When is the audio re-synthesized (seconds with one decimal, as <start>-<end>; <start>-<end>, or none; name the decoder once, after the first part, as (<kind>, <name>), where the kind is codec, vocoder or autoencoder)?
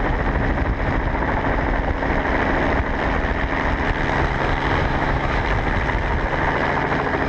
4.8-5.4 (autoencoder, DAC-VAE)